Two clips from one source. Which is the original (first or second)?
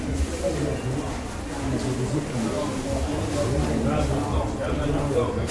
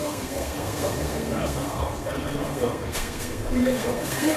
first